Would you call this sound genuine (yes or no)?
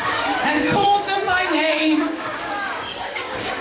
no